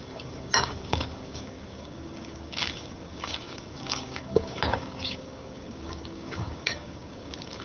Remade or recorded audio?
remade